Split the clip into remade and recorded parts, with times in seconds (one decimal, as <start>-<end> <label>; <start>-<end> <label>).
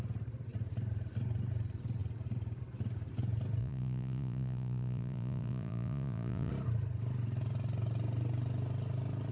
0.0-3.6 recorded; 3.6-6.5 remade; 6.5-9.3 recorded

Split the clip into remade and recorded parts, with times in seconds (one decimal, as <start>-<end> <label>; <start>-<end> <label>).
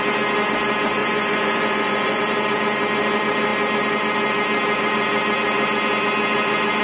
0.0-1.0 recorded; 1.0-2.2 remade; 2.2-6.8 recorded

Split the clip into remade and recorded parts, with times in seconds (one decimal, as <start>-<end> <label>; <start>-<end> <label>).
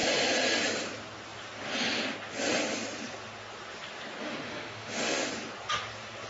0.0-4.2 recorded; 4.2-5.3 remade; 5.3-6.3 recorded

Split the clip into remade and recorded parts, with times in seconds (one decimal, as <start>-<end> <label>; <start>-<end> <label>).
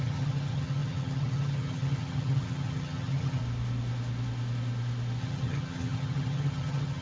0.0-3.4 remade; 3.4-5.2 recorded; 5.2-7.0 remade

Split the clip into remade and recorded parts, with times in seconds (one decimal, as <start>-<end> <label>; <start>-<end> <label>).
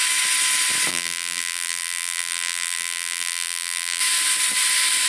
0.0-0.9 recorded; 0.9-4.0 remade; 4.0-5.1 recorded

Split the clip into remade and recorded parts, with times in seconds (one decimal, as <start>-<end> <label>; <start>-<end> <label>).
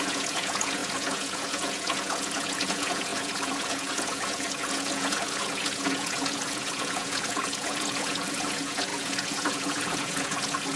0.0-10.8 remade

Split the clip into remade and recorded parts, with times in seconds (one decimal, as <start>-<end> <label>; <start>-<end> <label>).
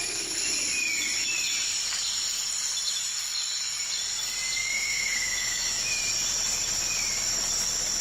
0.0-4.6 recorded; 4.6-6.0 remade; 6.0-8.0 recorded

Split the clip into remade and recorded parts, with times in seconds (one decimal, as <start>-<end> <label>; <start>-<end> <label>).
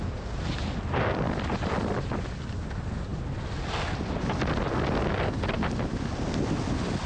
0.0-7.1 recorded